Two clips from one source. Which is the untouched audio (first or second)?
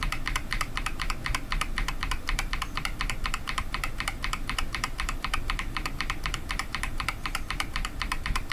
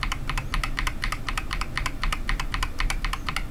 second